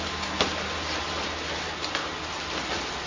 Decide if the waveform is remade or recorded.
recorded